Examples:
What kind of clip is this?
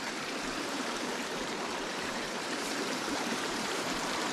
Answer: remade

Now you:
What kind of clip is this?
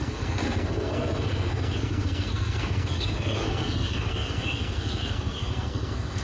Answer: remade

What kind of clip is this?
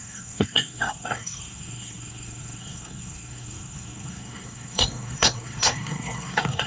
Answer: remade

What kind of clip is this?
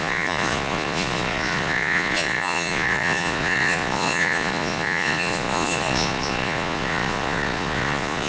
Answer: remade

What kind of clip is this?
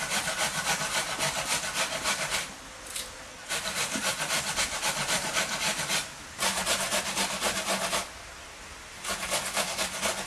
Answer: recorded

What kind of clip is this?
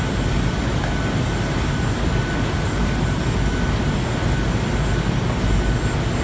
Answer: recorded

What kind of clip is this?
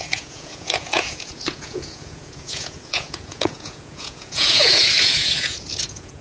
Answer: remade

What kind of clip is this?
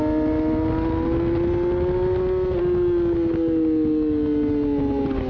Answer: recorded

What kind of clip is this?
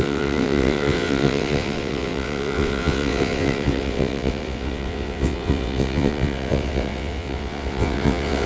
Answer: remade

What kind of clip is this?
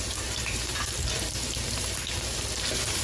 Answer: remade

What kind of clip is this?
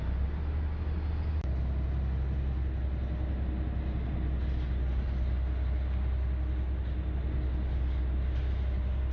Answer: recorded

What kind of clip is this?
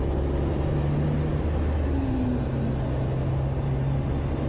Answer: recorded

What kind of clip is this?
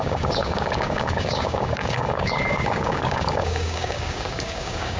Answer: remade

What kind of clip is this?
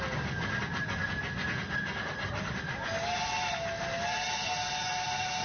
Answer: recorded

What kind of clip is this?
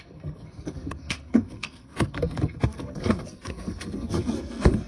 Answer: remade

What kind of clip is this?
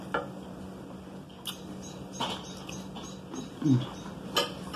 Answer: recorded